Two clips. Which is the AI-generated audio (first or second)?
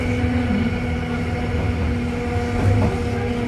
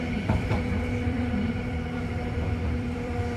second